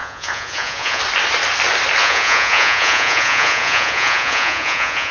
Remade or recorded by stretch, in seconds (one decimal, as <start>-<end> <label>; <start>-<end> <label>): 0.0-1.0 remade; 1.0-2.0 recorded; 2.0-5.1 remade